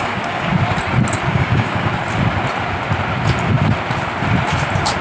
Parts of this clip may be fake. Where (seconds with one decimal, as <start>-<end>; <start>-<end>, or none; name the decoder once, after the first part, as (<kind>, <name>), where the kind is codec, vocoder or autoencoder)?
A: 0.0-0.5 (codec, DAC); 1.3-1.9